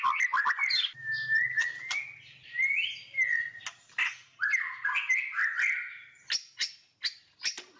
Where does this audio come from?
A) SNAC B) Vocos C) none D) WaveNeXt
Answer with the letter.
C